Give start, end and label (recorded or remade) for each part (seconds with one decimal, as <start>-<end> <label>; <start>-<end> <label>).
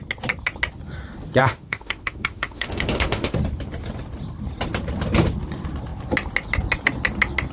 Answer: 0.0-1.4 recorded; 1.4-3.3 remade; 3.3-7.5 recorded